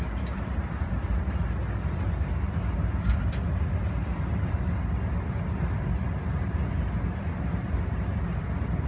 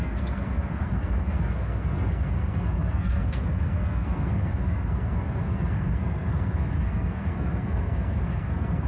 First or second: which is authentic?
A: first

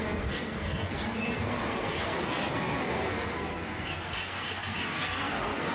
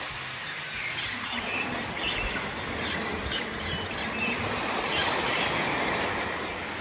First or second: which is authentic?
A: second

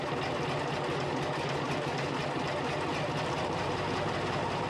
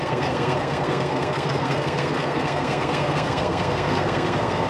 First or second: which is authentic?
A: first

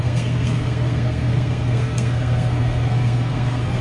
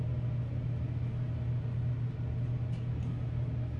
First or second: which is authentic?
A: second